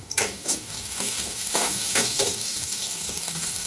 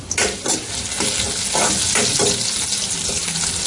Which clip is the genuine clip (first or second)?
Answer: second